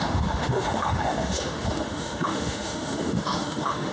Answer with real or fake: fake